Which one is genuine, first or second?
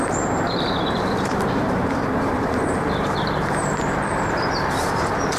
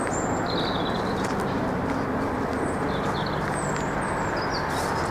second